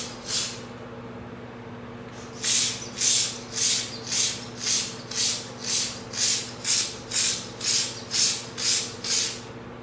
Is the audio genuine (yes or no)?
yes